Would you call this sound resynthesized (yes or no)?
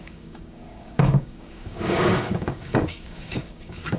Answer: yes